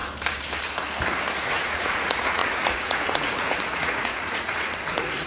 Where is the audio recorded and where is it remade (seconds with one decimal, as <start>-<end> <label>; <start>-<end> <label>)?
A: 0.0-1.5 recorded; 1.5-5.3 remade

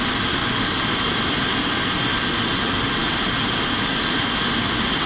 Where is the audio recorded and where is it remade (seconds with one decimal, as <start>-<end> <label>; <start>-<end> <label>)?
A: 0.0-5.1 recorded

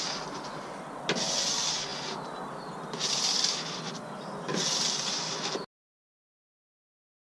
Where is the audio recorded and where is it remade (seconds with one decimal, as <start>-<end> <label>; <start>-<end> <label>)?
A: 0.0-7.3 recorded

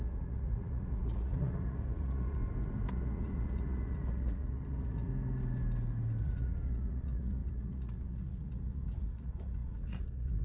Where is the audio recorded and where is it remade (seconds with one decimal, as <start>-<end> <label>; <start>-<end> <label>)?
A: 0.0-2.4 remade; 2.4-2.9 recorded; 2.9-5.1 remade; 5.1-6.2 recorded; 6.2-10.4 remade

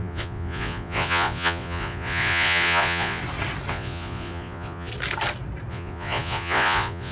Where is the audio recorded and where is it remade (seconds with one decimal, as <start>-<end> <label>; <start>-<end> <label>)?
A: 0.0-3.2 remade; 3.2-3.7 recorded; 3.7-4.9 remade; 4.9-5.7 recorded; 5.7-7.1 remade

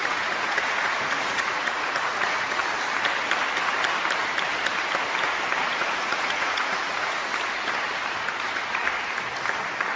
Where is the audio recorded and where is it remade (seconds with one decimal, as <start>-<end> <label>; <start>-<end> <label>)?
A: 0.0-2.6 remade; 2.6-5.6 recorded; 5.6-7.3 remade; 7.3-8.4 recorded; 8.4-8.8 remade; 8.8-10.0 recorded

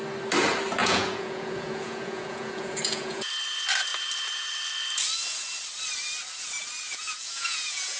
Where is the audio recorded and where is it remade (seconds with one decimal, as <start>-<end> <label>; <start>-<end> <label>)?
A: 0.0-0.8 recorded; 0.8-3.3 remade; 3.3-6.9 recorded; 6.9-8.0 remade